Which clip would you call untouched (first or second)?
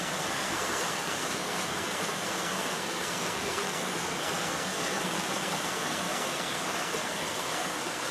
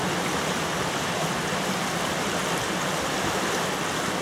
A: second